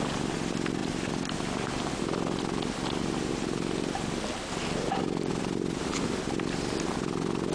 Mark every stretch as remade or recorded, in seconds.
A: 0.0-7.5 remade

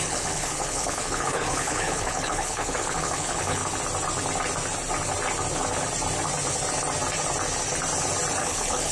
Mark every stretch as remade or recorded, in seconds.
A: 0.0-3.6 remade; 3.6-8.4 recorded; 8.4-8.9 remade

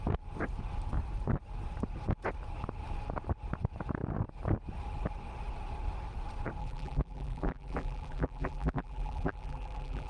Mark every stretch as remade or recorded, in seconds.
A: 0.0-6.6 recorded; 6.6-10.1 remade

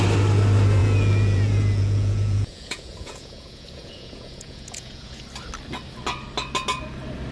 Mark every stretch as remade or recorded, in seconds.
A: 0.0-0.8 recorded; 0.8-5.2 remade; 5.2-7.3 recorded

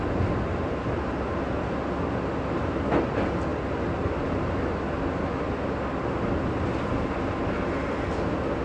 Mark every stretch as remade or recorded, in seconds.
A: 0.0-0.5 recorded; 0.5-1.3 remade; 1.3-8.6 recorded

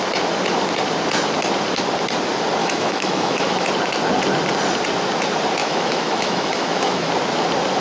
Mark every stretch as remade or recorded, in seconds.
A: 0.0-2.6 recorded; 2.6-3.7 remade; 3.7-5.6 recorded; 5.6-7.1 remade; 7.1-7.8 recorded

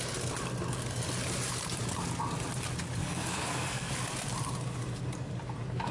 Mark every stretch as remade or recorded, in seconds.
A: 0.0-3.0 recorded; 3.0-3.9 remade; 3.9-5.9 recorded

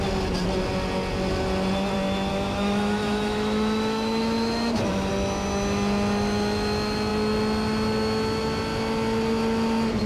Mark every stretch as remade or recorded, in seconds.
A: 0.0-2.3 recorded; 2.3-5.1 remade; 5.1-10.1 recorded